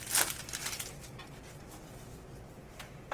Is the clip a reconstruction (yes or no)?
no